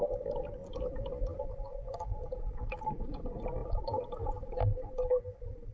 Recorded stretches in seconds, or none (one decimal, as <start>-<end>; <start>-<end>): 0.0-0.6; 1.4-5.7